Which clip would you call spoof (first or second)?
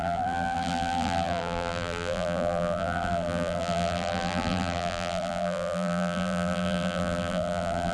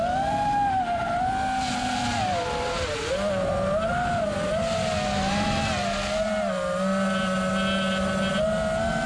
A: first